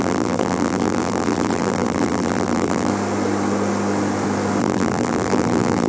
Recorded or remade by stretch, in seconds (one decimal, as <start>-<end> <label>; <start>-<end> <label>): 0.0-2.9 remade; 2.9-4.6 recorded; 4.6-5.9 remade